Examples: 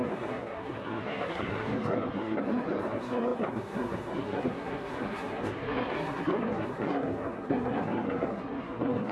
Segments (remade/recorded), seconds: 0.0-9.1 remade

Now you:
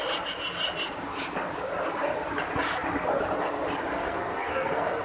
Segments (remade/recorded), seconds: 0.0-4.0 recorded; 4.0-5.0 remade

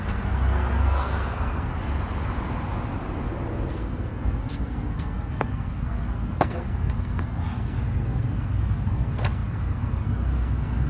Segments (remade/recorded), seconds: 0.0-1.7 remade; 1.7-3.7 recorded; 3.7-10.9 remade

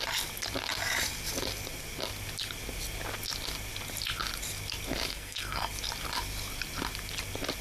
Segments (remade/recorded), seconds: 0.0-5.1 recorded; 5.1-5.7 remade; 5.7-7.6 recorded

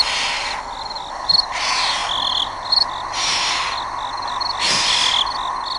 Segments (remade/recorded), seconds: 0.0-5.8 recorded